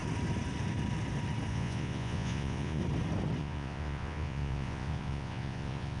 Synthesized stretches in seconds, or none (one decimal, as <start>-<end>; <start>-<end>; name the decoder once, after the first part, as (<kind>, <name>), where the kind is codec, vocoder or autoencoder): 1.5-2.8 (vocoder, Vocos); 3.4-6.0